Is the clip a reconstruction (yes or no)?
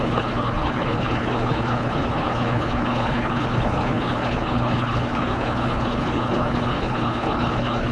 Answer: yes